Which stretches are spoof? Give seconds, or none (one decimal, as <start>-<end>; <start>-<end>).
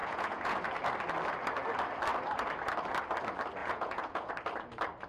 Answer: 0.0-0.6; 3.6-4.3